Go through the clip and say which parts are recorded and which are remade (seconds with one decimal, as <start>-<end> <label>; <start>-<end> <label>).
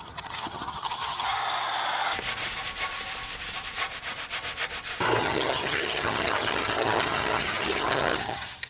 0.0-1.4 remade; 1.4-5.2 recorded; 5.2-8.7 remade